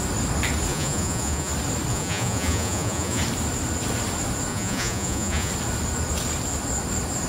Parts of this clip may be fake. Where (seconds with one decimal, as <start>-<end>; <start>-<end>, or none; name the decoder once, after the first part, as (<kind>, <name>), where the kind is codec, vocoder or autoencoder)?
0.7-1.5 (vocoder, Vocos); 1.9-3.2; 4.5-5.5